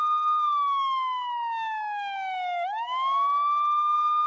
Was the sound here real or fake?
fake